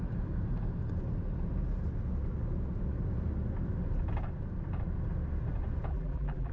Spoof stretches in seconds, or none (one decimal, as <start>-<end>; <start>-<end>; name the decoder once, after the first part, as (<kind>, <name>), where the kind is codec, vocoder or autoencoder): 5.9-6.5 (vocoder, BigVGAN v2)